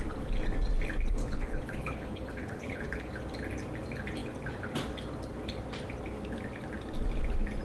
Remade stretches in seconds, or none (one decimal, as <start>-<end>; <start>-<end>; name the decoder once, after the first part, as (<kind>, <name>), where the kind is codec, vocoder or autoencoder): 1.2-3.1 (codec, HILCodec)